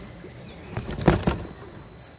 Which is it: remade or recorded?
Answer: recorded